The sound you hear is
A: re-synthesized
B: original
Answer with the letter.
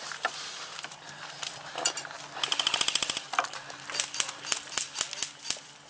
B